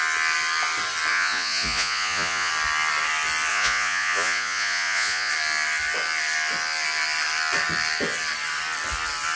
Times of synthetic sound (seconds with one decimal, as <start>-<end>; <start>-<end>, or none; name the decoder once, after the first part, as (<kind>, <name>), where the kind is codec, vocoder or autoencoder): 1.1-2.5 (vocoder, Vocos); 3.5-5.3